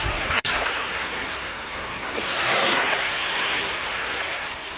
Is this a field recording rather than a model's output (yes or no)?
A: no